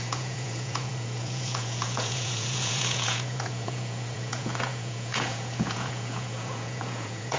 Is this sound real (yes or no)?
no